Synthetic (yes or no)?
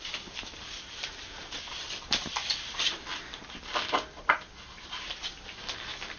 no